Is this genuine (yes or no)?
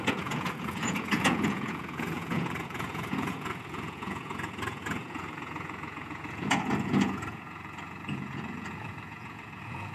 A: no